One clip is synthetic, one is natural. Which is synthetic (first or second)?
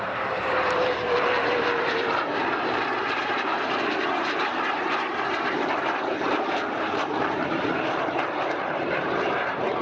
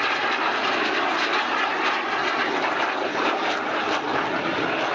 first